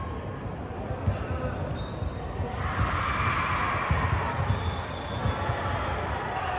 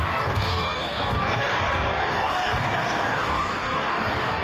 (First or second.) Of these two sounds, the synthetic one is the second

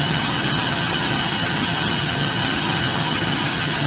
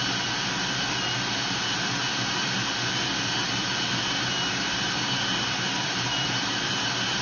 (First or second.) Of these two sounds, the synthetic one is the first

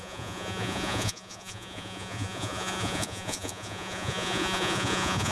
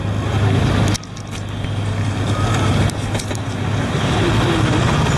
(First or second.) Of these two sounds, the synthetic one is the first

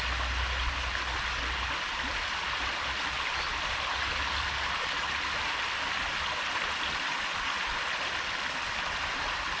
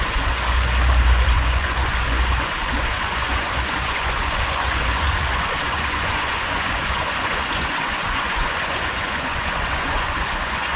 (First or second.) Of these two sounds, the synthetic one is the second